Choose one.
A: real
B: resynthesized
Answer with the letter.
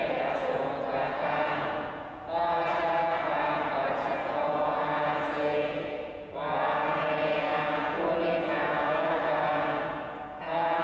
B